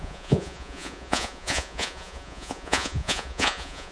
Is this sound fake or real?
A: fake